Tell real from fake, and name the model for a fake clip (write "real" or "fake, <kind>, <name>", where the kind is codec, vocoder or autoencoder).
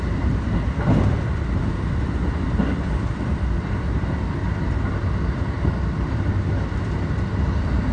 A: fake, vocoder, BigVGAN v2